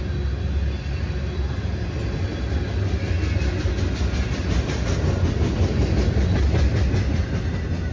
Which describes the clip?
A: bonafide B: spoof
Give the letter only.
A